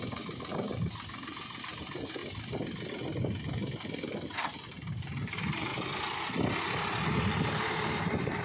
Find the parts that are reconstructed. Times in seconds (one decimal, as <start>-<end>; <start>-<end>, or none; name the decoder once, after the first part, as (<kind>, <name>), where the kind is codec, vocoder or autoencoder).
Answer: 0.0-2.2 (vocoder, BigVGAN v2); 4.7-5.7; 7.3-8.4